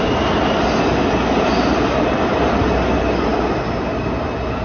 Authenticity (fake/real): real